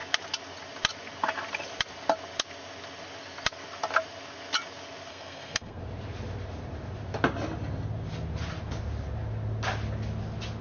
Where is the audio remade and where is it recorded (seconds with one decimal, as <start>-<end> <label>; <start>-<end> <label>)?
0.0-5.1 recorded; 5.1-5.8 remade; 5.8-10.6 recorded